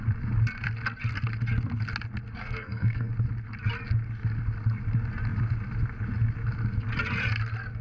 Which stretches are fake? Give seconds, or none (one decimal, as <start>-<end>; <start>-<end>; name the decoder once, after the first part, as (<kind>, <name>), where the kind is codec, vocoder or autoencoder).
2.4-3.1 (codec, SNAC)